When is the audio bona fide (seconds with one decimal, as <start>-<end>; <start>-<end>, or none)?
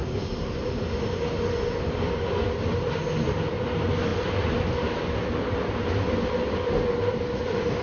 0.0-7.8